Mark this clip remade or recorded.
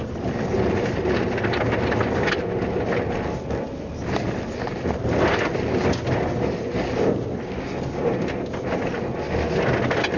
recorded